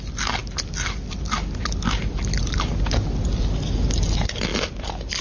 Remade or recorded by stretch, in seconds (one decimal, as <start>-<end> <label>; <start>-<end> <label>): 0.0-5.2 recorded

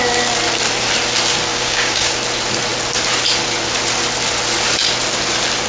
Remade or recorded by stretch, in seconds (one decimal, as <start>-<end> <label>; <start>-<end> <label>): 0.0-1.5 recorded; 1.5-2.1 remade; 2.1-5.7 recorded

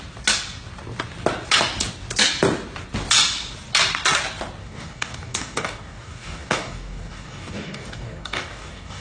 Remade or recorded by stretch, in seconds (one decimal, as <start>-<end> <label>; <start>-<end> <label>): 0.0-4.6 recorded; 4.6-9.0 remade

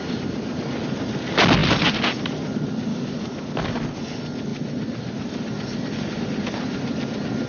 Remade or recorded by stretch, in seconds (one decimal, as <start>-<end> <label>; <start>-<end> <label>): 0.0-2.9 recorded; 2.9-3.8 remade; 3.8-7.5 recorded

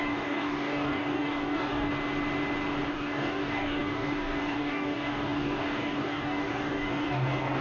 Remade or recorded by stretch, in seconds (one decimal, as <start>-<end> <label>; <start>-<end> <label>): 0.0-1.9 remade; 1.9-2.9 recorded; 2.9-7.6 remade

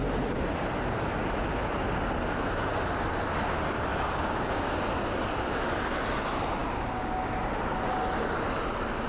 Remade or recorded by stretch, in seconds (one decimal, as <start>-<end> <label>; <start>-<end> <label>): 0.0-3.9 recorded; 3.9-4.8 remade; 4.8-9.1 recorded

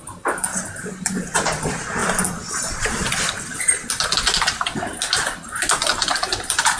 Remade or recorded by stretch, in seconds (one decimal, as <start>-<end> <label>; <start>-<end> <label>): 0.0-6.8 recorded